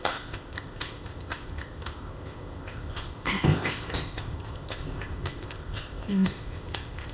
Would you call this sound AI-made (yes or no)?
yes